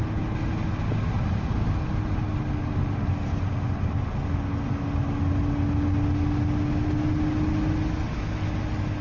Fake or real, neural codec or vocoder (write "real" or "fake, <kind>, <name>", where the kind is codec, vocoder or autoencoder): real